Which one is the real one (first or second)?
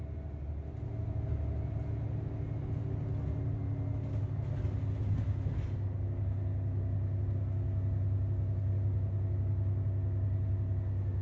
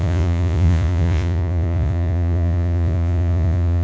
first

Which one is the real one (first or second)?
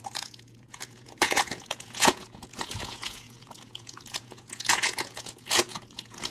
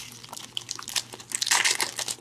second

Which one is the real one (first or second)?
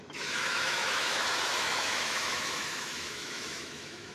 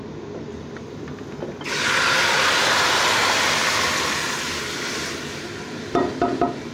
second